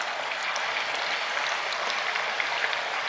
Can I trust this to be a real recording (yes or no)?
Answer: yes